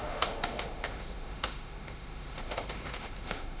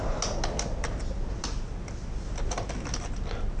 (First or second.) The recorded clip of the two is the second